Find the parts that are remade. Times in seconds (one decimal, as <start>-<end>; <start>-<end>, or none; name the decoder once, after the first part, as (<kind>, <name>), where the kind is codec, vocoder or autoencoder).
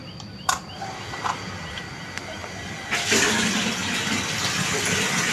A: 0.0-1.9 (vocoder, BigVGAN v2); 3.8-5.3